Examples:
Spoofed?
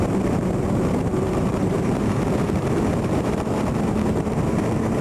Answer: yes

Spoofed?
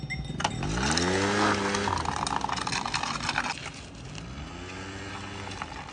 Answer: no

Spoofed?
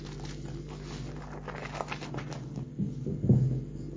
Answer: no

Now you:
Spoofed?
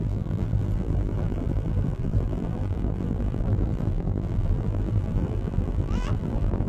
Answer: yes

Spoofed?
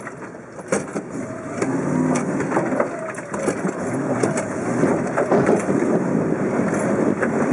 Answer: yes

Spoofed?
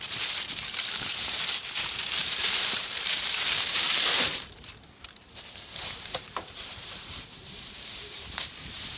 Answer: yes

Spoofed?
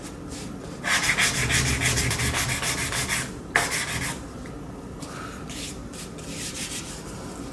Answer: no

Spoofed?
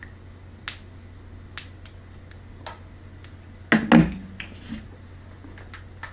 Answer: no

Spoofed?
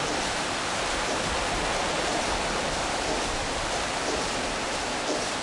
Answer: yes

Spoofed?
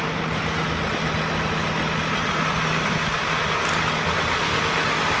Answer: no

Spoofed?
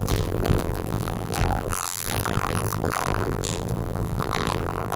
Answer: yes